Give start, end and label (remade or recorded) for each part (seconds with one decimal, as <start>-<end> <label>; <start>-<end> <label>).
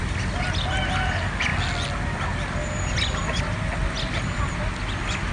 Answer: 0.0-5.3 recorded